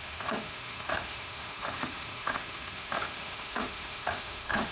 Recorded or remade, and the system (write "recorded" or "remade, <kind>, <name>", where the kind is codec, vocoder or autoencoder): remade, autoencoder, DAC-VAE